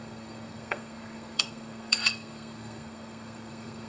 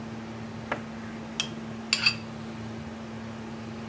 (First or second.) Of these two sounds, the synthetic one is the first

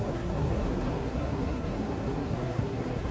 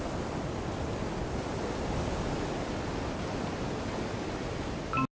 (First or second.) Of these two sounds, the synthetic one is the first